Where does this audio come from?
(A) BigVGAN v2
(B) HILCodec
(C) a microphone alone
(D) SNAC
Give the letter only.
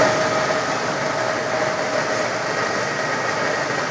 C